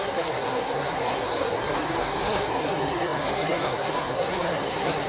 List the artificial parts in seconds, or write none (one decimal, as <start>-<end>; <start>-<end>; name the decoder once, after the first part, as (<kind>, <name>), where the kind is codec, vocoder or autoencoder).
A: 0.0-5.1 (codec, SNAC)